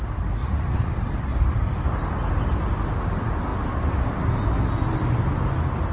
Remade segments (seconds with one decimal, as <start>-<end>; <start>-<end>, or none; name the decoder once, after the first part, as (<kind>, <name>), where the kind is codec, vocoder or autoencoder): 0.4-0.9 (vocoder, Vocos)